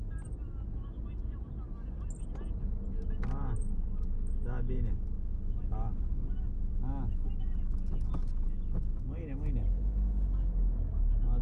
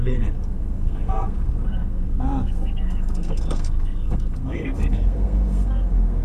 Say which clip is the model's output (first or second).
second